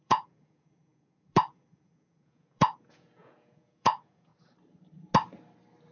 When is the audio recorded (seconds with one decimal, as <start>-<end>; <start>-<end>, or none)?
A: 4.3-5.9